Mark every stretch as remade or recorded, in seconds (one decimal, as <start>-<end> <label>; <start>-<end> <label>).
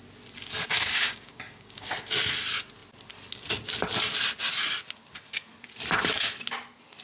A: 0.0-0.9 recorded; 0.9-1.9 remade; 1.9-7.0 recorded